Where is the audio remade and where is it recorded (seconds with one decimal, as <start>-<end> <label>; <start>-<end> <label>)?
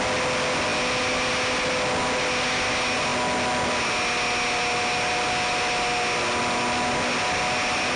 0.0-8.0 recorded